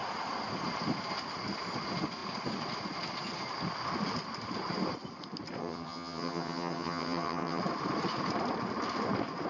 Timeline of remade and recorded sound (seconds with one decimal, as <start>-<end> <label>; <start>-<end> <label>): 0.0-5.6 recorded; 5.6-7.6 remade; 7.6-9.5 recorded